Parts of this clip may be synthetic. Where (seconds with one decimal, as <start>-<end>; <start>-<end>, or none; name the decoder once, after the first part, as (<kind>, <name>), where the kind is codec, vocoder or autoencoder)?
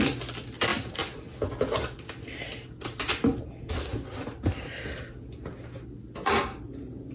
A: none